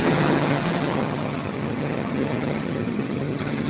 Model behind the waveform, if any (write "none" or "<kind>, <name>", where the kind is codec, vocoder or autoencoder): vocoder, HiFi-GAN